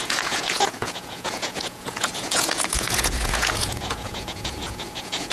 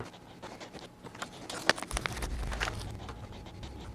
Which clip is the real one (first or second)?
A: second